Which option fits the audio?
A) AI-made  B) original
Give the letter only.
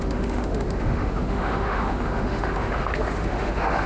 A